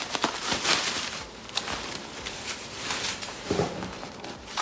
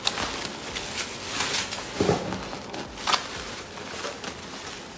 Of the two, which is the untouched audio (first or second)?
second